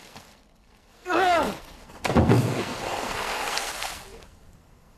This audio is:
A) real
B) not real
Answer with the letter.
B